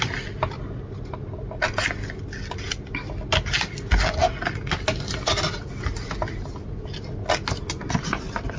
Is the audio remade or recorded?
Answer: recorded